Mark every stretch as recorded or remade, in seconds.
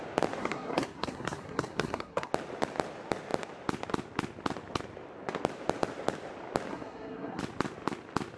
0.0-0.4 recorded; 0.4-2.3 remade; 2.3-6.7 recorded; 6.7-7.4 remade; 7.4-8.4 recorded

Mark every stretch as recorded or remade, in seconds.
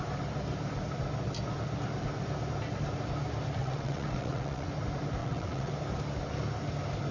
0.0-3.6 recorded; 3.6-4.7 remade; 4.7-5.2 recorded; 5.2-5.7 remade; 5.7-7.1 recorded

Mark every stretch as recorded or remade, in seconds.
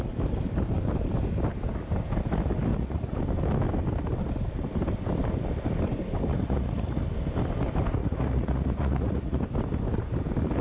0.0-2.7 recorded; 2.7-3.2 remade; 3.2-6.3 recorded; 6.3-7.0 remade; 7.0-8.0 recorded; 8.0-9.4 remade; 9.4-10.6 recorded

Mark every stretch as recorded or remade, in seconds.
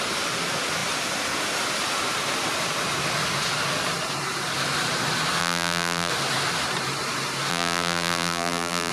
0.0-5.4 recorded; 5.4-6.1 remade; 6.1-7.5 recorded; 7.5-8.9 remade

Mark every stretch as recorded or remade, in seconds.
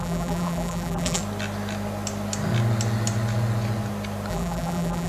0.0-1.2 remade; 1.2-4.3 recorded; 4.3-5.1 remade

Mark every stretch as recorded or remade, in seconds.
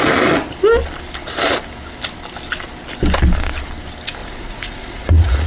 0.0-4.2 recorded; 4.2-5.5 remade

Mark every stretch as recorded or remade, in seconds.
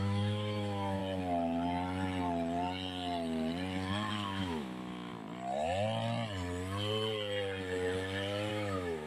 0.0-1.0 remade; 1.0-4.1 recorded; 4.1-5.1 remade; 5.1-8.5 recorded; 8.5-9.1 remade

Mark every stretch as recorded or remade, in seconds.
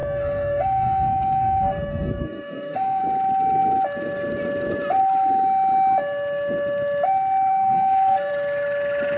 0.0-3.0 remade; 3.0-7.5 recorded; 7.5-8.3 remade; 8.3-9.2 recorded